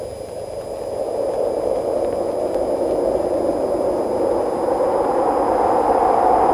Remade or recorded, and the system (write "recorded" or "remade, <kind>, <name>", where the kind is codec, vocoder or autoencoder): recorded